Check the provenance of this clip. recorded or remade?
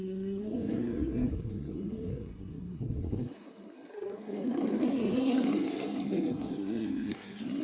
remade